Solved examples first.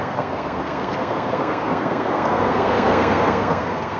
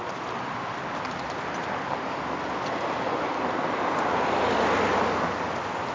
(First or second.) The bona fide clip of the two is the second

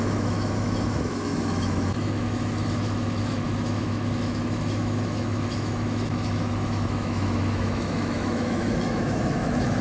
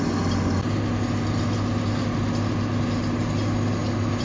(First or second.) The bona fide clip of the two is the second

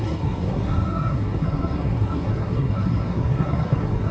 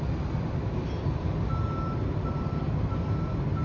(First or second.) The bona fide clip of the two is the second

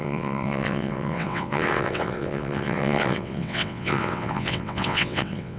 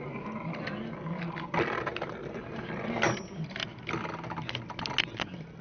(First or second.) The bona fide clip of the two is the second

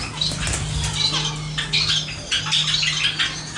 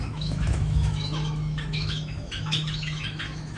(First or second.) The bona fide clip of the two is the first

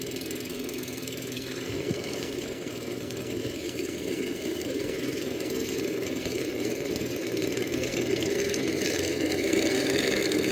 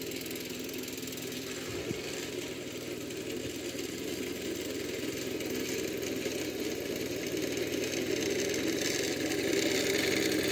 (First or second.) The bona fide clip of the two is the second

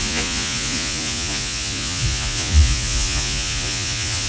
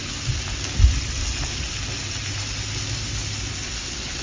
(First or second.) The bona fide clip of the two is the second